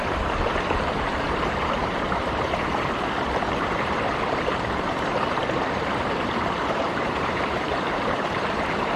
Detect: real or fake fake